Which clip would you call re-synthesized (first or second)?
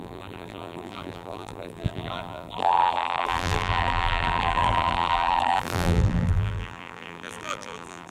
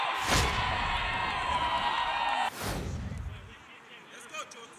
first